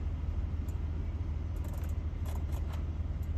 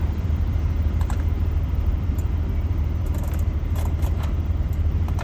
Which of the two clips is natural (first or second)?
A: first